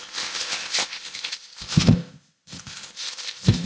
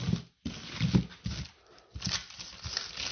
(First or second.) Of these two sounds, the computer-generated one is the first